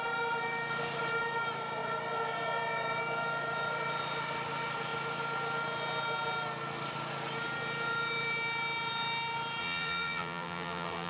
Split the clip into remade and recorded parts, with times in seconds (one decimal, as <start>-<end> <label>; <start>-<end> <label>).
0.0-9.6 recorded; 9.6-11.1 remade